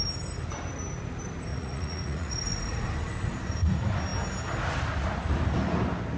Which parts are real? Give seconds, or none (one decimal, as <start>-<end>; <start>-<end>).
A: 0.0-1.5; 2.9-6.2